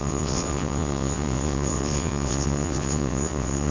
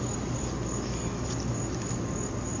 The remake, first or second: first